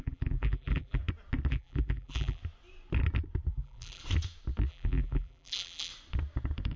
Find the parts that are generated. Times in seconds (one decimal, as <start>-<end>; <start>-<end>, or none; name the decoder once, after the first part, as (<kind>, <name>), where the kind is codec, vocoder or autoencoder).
0.0-1.0 (vocoder, BigVGAN v2); 1.5-2.4; 3.5-4.0; 4.7-5.9